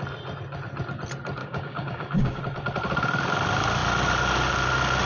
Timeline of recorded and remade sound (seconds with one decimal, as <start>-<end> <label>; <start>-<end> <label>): 0.0-1.4 recorded; 1.4-2.4 remade; 2.4-5.0 recorded